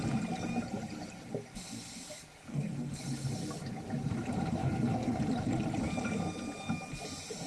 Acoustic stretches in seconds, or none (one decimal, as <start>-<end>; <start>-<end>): 0.0-2.5; 3.0-4.6; 5.2-7.5